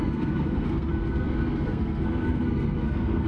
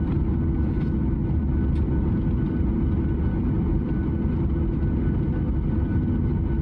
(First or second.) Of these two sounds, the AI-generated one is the first